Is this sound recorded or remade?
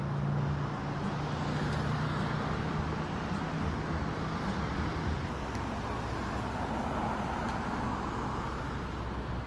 recorded